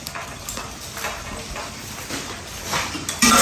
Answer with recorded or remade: recorded